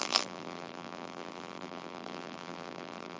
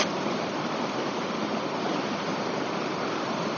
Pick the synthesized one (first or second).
first